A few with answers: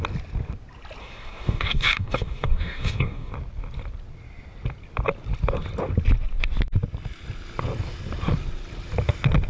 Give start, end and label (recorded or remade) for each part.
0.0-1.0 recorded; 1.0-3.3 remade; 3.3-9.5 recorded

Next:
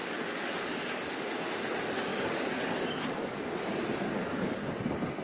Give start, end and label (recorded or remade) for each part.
0.0-1.1 remade; 1.1-2.1 recorded; 2.1-3.7 remade; 3.7-4.2 recorded; 4.2-4.7 remade; 4.7-5.2 recorded

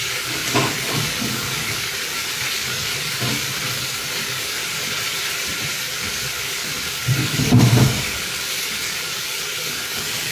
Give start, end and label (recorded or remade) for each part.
0.0-4.6 remade; 4.6-5.7 recorded; 5.7-10.3 remade

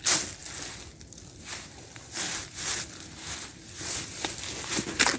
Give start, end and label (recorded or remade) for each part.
0.0-5.2 recorded

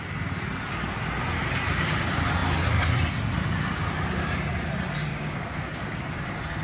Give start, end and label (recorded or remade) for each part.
0.0-5.1 recorded; 5.1-6.0 remade; 6.0-6.6 recorded